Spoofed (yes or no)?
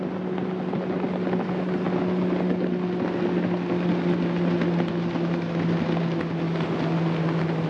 no